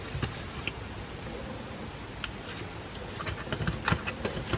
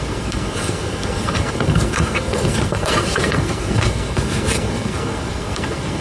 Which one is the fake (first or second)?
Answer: second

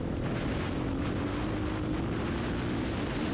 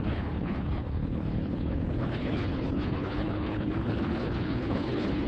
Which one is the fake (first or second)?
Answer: second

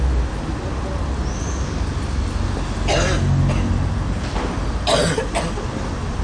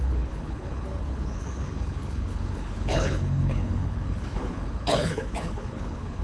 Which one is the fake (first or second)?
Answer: second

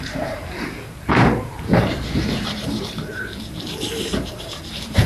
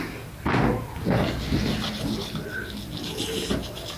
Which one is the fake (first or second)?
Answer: first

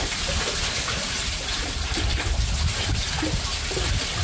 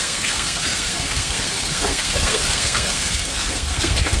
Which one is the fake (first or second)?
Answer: second